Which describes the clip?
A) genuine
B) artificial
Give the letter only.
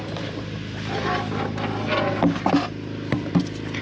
A